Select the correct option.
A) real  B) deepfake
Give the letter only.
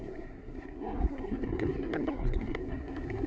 B